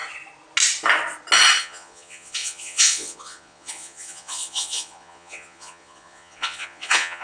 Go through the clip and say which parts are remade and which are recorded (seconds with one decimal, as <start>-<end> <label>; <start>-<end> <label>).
0.0-1.6 recorded; 1.6-7.2 remade